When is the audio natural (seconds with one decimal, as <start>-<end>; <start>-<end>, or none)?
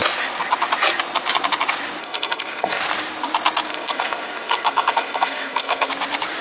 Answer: 0.0-2.0; 2.8-3.7; 5.9-6.4